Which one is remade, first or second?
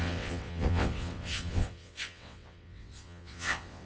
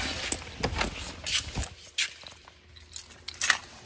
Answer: first